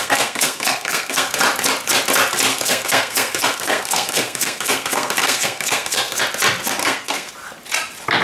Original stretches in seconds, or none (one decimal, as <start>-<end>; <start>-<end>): 1.4-2.5; 6.2-6.8; 7.3-8.2